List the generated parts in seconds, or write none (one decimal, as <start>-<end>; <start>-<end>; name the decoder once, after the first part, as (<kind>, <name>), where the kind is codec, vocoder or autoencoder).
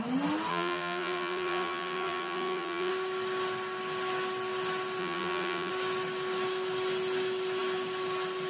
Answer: 0.5-2.9 (vocoder, BigVGAN v2); 5.0-5.7